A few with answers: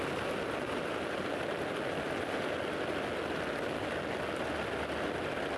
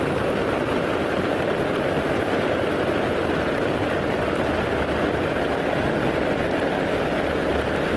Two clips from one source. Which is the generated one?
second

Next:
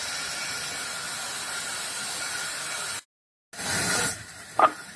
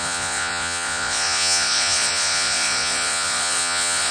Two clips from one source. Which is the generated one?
second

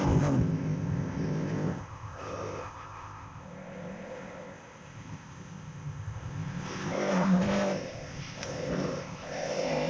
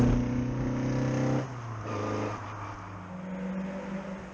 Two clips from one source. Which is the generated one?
first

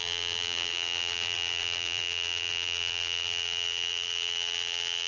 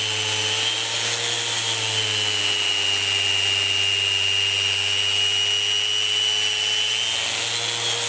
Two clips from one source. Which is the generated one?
first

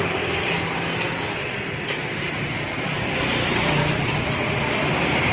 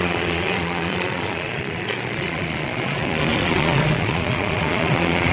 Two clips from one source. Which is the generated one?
second